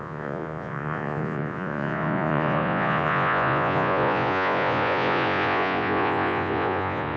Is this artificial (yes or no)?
yes